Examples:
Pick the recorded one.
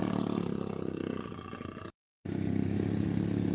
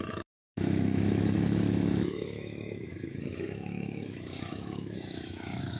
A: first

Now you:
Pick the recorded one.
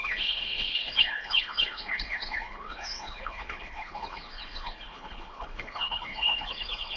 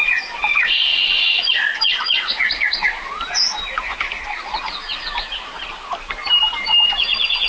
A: second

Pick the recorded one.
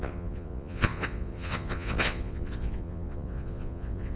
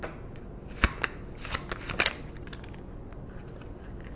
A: second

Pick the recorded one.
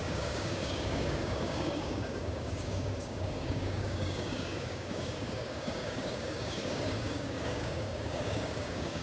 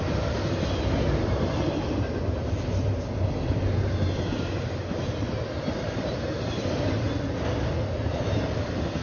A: second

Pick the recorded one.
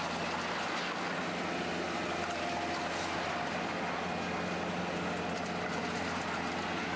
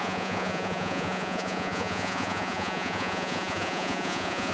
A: first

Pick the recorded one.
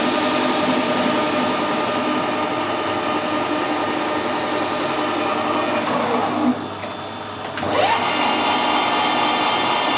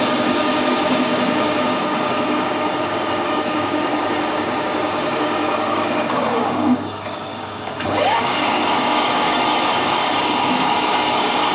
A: first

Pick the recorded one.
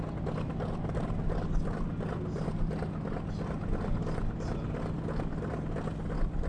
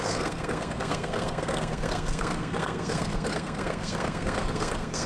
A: first